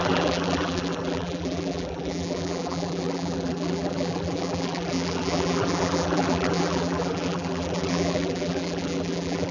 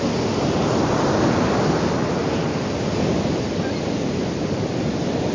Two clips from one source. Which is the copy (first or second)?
first